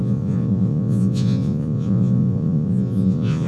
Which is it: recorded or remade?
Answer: remade